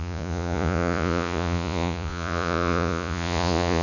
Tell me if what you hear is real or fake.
fake